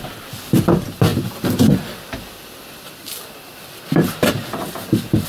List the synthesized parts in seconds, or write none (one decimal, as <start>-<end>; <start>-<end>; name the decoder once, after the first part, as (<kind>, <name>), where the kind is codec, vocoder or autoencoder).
none